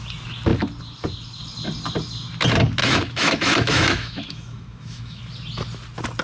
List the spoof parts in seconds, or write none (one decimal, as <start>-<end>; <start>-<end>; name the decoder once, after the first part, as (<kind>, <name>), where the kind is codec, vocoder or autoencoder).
2.8-5.2 (autoencoder, DAC-VAE)